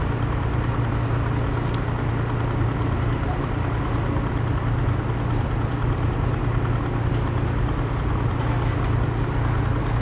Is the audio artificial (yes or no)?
no